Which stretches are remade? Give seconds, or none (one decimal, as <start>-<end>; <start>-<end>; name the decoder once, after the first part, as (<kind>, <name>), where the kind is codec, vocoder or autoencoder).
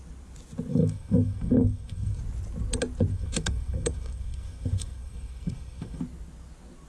0.7-2.2 (codec, SNAC); 3.1-6.0